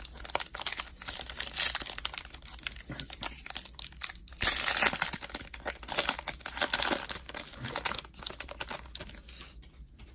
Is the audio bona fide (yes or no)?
yes